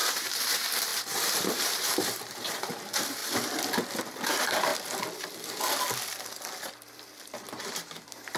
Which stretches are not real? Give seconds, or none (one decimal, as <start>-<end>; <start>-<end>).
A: 0.0-3.2; 4.0-4.7; 7.7-8.4